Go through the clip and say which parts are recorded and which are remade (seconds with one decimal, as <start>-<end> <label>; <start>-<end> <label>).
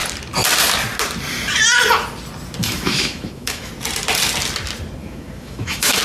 0.0-2.6 recorded; 2.6-3.7 remade; 3.7-5.0 recorded; 5.0-6.0 remade